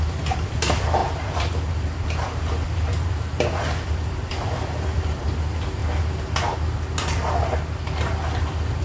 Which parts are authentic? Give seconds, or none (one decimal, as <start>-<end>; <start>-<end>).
5.8-8.8